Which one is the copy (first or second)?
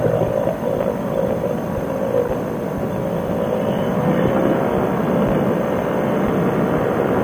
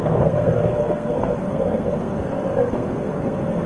second